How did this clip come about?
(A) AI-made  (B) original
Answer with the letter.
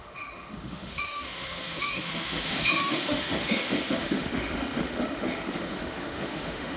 A